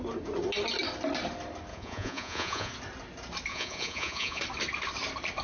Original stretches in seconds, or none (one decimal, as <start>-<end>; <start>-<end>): 0.0-1.7; 2.7-3.5; 4.4-5.4